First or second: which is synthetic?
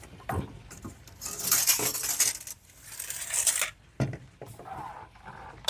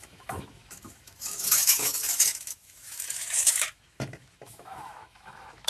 second